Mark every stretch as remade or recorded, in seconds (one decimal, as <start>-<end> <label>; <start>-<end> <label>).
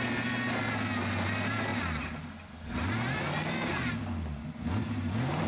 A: 0.0-5.5 recorded